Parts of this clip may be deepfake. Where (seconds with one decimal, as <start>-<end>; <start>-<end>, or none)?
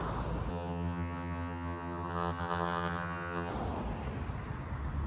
0.5-3.5